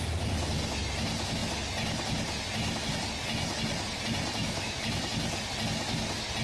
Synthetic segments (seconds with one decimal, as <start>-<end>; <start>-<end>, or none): 4.4-5.0